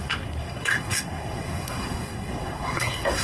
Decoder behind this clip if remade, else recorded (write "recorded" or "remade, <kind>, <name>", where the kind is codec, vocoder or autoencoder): remade, codec, SNAC